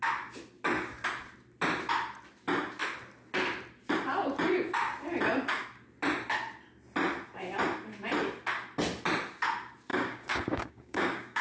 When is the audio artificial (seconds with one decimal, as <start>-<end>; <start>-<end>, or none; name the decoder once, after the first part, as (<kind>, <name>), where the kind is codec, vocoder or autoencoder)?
9.9-11.4 (codec, DAC)

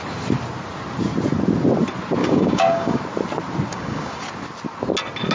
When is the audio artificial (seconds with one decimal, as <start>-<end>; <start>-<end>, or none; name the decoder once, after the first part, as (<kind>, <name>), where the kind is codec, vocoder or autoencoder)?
2.2-3.0 (codec, DAC); 3.7-4.2

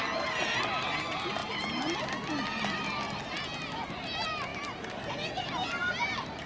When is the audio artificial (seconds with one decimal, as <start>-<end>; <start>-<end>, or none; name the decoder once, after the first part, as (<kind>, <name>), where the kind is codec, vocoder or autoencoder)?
none

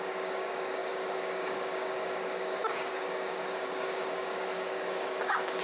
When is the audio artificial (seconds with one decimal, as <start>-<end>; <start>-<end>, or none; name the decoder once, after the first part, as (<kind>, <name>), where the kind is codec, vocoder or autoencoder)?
0.0-5.6 (codec, DAC)

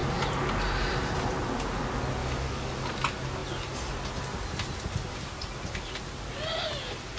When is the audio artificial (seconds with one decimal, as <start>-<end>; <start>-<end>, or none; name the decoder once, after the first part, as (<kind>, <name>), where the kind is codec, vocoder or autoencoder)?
2.2-2.9 (codec, DAC)